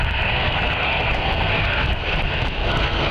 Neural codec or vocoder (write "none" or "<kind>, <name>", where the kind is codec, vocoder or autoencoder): codec, SNAC